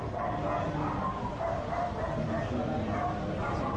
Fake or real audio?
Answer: real